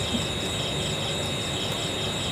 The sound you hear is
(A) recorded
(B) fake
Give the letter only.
A